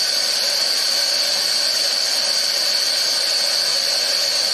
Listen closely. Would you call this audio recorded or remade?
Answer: recorded